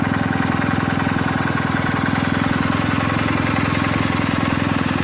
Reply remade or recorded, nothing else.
recorded